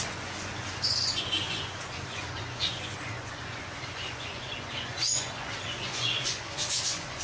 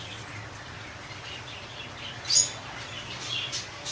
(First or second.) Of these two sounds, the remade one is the first